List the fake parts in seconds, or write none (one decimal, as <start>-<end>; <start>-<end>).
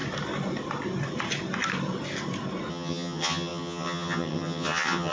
2.7-5.1